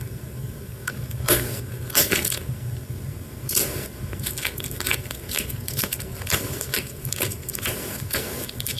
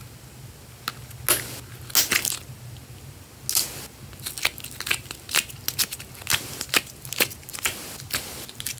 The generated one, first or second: first